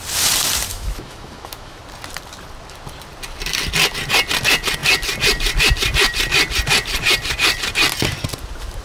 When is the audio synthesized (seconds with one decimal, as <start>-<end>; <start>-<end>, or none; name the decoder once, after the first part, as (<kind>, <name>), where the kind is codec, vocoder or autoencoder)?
0.7-1.8 (autoencoder, DAC-VAE)